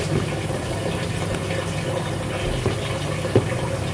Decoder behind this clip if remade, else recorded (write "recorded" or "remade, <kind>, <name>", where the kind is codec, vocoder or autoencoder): recorded